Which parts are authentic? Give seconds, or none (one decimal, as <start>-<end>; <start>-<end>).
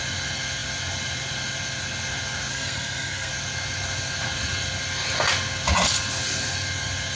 0.0-2.5; 3.3-7.2